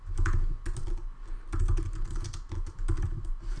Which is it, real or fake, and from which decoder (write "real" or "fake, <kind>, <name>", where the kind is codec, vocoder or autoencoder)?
real